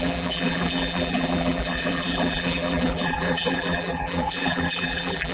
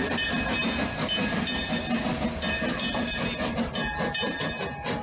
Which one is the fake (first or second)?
first